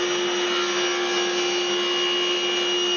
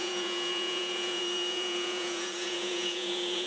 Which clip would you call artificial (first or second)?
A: second